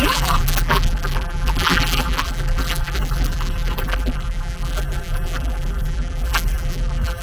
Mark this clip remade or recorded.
remade